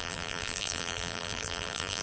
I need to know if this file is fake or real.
fake